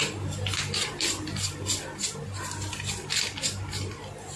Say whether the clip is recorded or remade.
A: recorded